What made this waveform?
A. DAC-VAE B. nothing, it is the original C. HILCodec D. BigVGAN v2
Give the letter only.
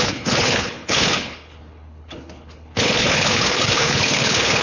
C